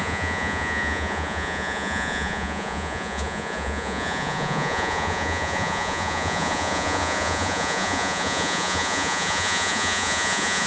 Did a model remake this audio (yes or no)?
yes